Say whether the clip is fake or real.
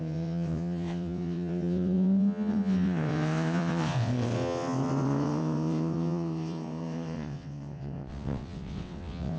fake